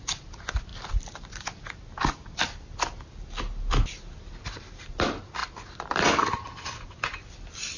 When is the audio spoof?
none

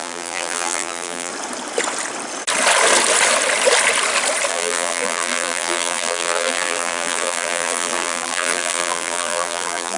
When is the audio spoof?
0.0-1.3 (vocoder, BigVGAN v2); 4.5-10.0